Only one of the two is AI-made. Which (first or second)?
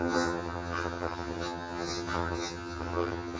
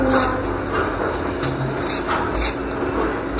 first